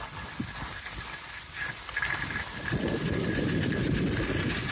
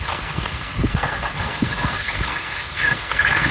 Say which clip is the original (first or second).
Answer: first